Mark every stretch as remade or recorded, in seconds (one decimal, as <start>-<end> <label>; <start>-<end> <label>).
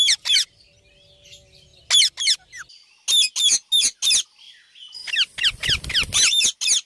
0.0-6.9 recorded